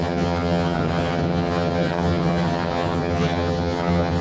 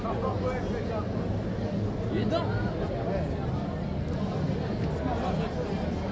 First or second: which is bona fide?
second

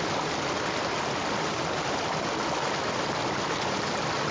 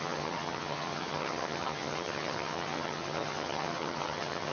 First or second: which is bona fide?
first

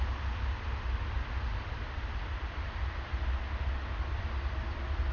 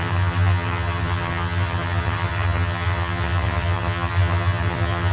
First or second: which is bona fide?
first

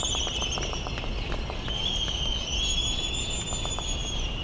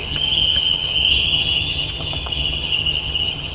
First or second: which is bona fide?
first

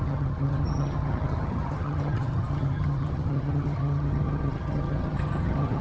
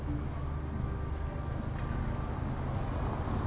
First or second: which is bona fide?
second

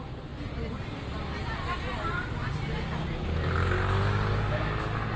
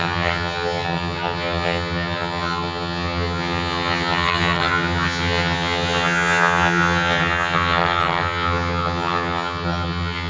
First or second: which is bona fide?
first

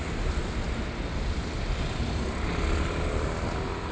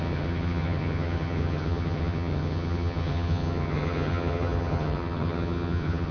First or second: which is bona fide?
first